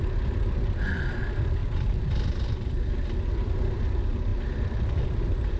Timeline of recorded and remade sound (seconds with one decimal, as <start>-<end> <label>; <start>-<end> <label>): 0.0-4.3 remade; 4.3-5.0 recorded; 5.0-5.6 remade